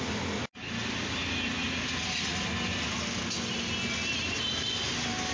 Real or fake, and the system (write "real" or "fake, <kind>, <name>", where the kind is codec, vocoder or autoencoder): real